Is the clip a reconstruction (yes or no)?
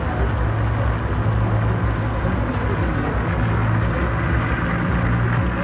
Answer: no